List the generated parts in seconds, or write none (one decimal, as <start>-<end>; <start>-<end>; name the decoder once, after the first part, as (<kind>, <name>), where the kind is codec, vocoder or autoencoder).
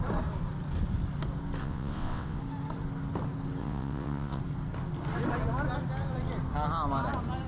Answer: 1.6-2.4 (vocoder, WaveNeXt); 3.6-4.4